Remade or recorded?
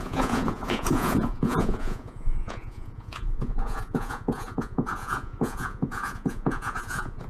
remade